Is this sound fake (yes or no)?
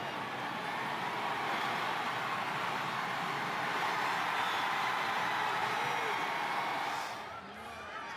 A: yes